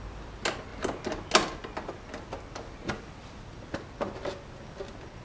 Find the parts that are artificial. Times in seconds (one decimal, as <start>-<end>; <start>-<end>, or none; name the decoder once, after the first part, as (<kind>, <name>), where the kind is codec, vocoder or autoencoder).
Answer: none